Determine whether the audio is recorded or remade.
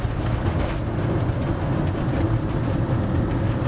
recorded